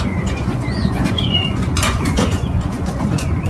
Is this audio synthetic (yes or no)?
yes